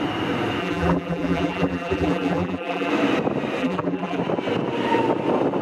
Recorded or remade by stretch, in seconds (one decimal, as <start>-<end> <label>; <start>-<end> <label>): 0.0-0.6 recorded; 0.6-2.9 remade; 2.9-3.6 recorded; 3.6-4.2 remade; 4.2-5.6 recorded